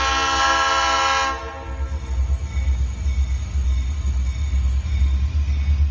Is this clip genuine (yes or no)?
yes